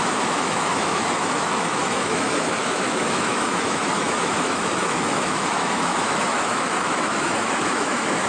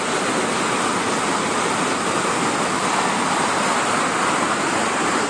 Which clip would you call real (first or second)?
second